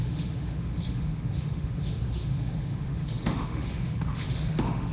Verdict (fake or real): fake